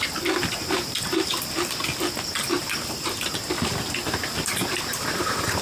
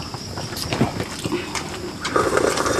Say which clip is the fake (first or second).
first